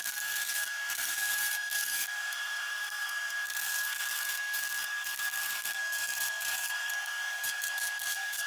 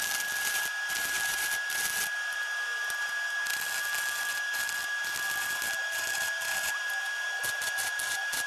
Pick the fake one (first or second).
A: first